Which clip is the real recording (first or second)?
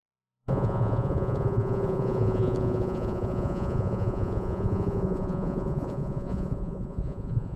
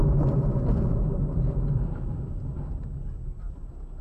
second